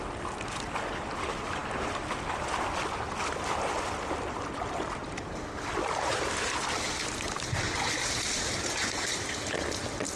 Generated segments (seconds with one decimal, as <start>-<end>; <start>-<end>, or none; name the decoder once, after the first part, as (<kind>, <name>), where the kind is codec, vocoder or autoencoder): none